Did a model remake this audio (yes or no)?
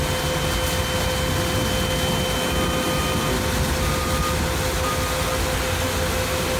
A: no